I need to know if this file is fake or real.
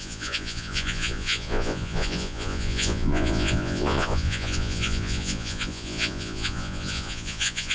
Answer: fake